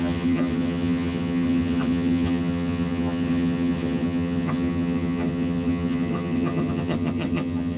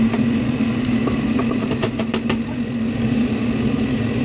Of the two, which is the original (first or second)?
second